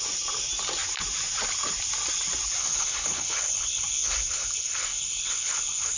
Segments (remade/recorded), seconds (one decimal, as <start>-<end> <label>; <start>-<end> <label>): 0.0-2.6 recorded; 2.6-6.0 remade